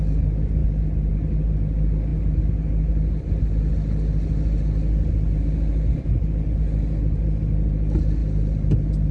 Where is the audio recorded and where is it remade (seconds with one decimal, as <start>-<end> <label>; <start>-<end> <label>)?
0.0-9.1 recorded